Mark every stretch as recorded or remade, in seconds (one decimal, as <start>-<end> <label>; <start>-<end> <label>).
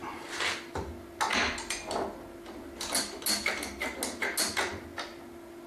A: 0.0-5.7 recorded